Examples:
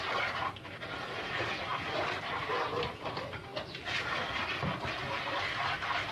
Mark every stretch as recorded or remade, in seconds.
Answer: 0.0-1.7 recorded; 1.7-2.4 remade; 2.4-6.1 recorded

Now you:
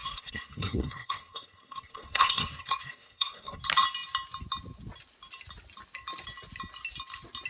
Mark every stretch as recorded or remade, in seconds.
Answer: 0.0-3.6 remade; 3.6-7.5 recorded

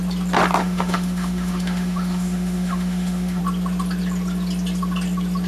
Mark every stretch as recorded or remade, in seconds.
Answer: 0.0-0.6 recorded; 0.6-3.4 remade; 3.4-5.5 recorded